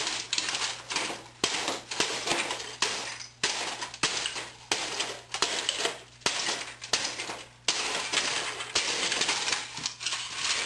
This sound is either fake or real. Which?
real